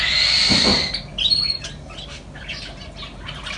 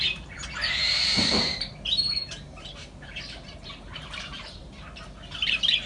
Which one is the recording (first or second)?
first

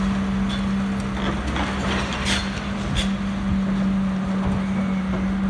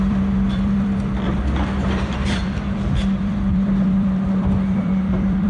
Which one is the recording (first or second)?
first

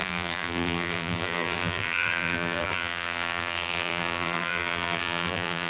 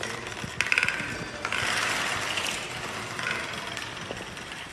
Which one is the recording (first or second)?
second